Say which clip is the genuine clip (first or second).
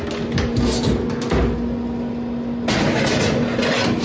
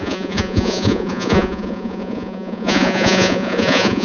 first